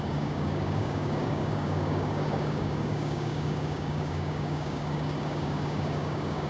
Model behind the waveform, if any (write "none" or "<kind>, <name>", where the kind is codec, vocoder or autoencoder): codec, DAC